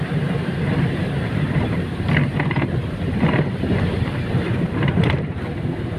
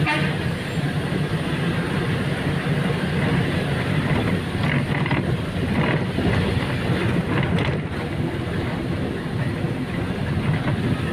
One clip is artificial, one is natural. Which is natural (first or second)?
second